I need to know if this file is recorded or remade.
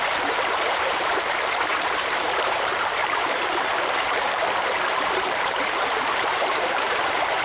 remade